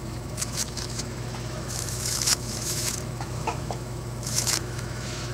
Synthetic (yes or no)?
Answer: yes